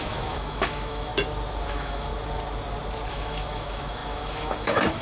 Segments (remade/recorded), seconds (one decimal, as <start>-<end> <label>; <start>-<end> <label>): 0.0-1.1 remade; 1.1-1.7 recorded; 1.7-2.1 remade; 2.1-3.1 recorded; 3.1-5.0 remade